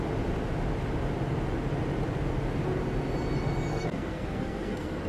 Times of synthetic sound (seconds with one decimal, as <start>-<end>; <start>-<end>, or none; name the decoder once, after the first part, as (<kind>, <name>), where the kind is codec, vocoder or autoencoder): 3.7-5.1 (codec, SNAC)